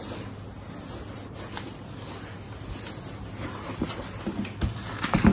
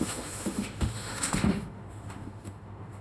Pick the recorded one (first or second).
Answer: first